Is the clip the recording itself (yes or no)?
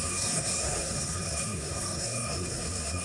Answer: no